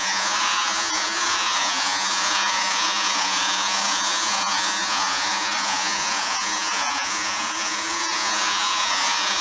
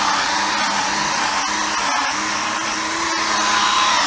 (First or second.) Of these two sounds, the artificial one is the first